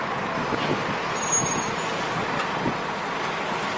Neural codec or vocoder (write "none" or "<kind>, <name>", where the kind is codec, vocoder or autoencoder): none